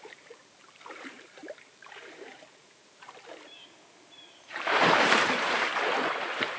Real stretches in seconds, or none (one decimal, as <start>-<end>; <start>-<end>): none